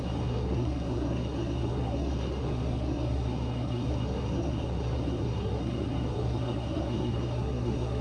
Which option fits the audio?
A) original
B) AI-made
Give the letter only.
B